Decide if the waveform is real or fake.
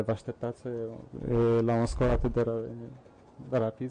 real